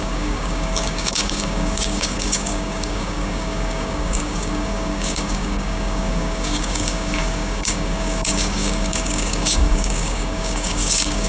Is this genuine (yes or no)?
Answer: no